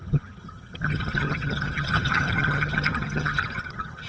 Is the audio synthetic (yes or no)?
yes